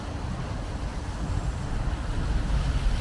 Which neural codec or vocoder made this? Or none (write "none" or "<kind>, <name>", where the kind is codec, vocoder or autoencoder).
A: none